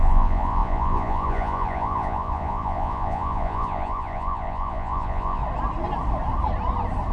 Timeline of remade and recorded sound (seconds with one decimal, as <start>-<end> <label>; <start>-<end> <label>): 0.0-5.4 remade; 5.4-7.1 recorded

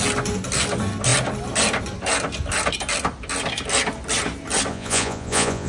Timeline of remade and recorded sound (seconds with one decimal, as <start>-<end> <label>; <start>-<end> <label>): 0.0-4.7 recorded; 4.7-5.7 remade

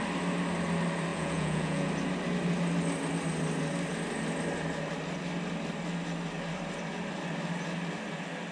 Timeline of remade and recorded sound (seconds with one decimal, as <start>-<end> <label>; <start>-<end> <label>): 0.0-1.1 recorded; 1.1-1.9 remade; 1.9-8.5 recorded

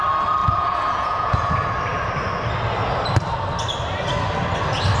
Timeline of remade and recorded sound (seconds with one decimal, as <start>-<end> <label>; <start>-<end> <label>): 0.0-0.4 recorded; 0.4-1.5 remade; 1.5-5.0 recorded

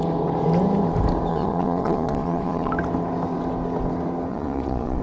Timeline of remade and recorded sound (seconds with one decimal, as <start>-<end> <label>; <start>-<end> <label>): 0.0-1.3 recorded; 1.3-2.7 remade; 2.7-4.3 recorded; 4.3-5.0 remade